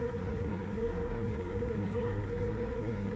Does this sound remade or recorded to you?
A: remade